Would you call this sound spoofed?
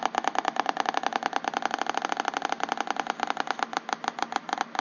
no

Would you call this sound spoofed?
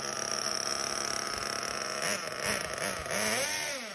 no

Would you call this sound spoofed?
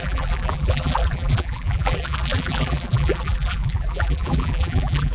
yes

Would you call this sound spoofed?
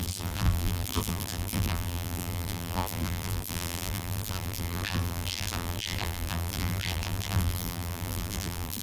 yes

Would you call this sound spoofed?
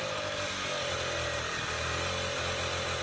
no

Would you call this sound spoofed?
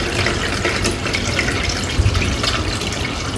no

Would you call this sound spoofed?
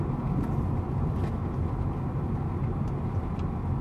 no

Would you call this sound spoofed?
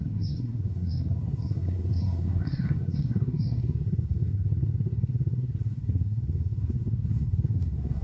yes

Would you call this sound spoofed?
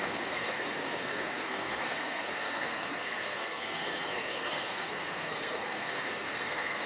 yes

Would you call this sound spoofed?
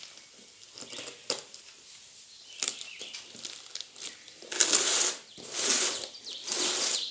no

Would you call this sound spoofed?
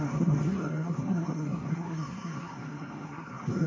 yes